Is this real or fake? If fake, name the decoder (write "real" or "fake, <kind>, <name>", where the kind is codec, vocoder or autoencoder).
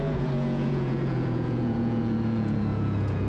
fake, vocoder, Vocos